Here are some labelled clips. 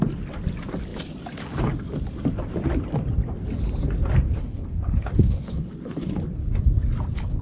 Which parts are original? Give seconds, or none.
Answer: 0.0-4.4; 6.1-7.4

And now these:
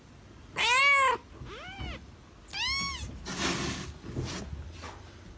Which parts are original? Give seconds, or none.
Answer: 0.0-5.4

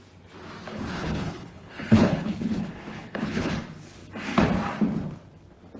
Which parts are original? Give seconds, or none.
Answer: 0.0-0.7; 3.5-5.8

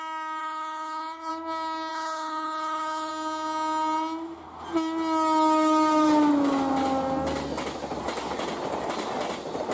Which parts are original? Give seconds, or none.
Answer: 0.0-0.4; 1.3-1.9; 3.1-9.7

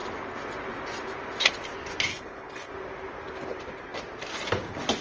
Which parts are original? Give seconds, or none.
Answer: 0.0-2.1; 2.7-5.0

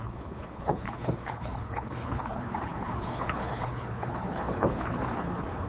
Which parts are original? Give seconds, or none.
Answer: none